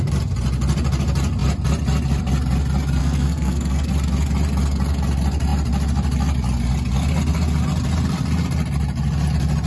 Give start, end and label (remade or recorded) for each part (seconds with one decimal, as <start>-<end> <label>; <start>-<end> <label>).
0.0-3.0 recorded; 3.0-3.9 remade; 3.9-9.7 recorded